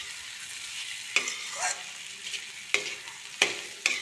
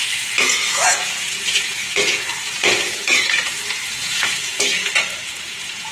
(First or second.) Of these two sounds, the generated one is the second